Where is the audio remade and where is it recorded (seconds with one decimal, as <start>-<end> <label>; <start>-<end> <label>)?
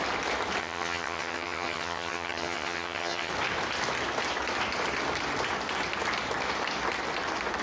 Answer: 0.0-0.6 recorded; 0.6-3.3 remade; 3.3-7.6 recorded